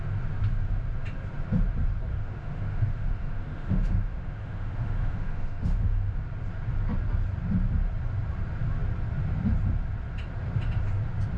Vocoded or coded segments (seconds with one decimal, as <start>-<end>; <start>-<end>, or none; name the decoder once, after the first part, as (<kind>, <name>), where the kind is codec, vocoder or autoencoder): 2.1-6.2 (autoencoder, DAC-VAE)